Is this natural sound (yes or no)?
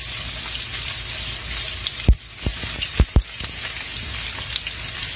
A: yes